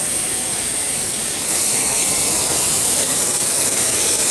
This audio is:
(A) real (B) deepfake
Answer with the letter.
B